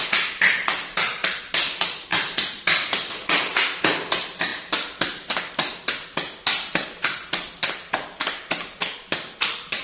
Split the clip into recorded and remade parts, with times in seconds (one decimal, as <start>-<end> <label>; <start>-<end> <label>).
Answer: 0.0-2.1 recorded; 2.1-3.6 remade; 3.6-9.8 recorded